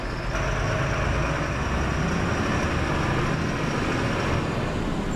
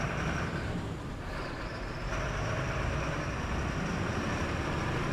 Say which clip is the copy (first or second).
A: second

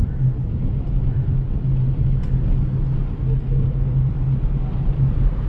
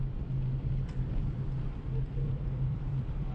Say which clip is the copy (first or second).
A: second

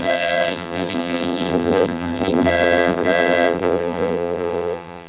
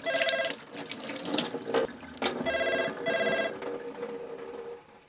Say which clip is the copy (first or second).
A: first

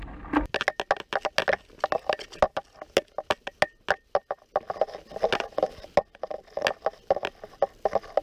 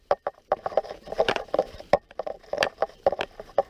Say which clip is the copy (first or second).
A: second